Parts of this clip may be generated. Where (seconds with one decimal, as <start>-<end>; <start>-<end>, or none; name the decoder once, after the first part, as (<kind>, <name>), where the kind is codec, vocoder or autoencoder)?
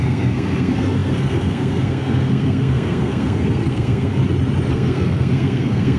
0.0-4.2 (codec, SNAC); 4.7-6.0